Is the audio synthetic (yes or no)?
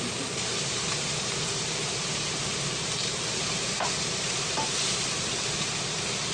yes